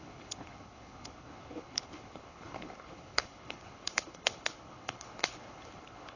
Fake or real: fake